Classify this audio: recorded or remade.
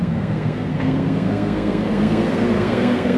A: remade